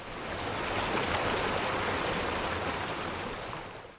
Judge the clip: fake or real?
real